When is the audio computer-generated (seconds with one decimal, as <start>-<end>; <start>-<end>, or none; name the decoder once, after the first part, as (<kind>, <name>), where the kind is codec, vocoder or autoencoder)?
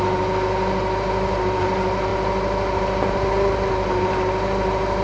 none